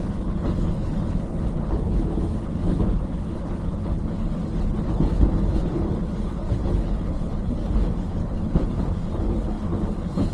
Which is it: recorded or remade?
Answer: remade